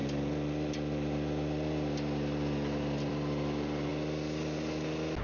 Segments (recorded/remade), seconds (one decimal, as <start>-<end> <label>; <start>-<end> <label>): 0.0-5.2 recorded